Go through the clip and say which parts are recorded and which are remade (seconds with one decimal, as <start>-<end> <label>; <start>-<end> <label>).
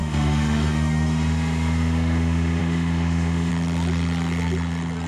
0.0-3.5 remade; 3.5-5.1 recorded